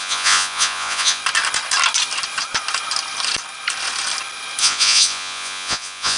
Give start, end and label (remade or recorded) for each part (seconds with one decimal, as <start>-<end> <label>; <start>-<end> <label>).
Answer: 0.0-1.2 remade; 1.2-4.6 recorded; 4.6-6.2 remade